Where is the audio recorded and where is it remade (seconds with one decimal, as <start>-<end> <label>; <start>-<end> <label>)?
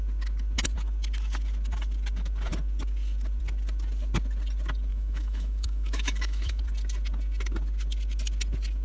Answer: 0.0-4.9 recorded; 4.9-6.6 remade; 6.6-8.8 recorded